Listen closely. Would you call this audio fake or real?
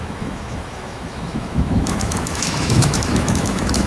fake